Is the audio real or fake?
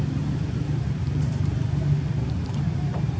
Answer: real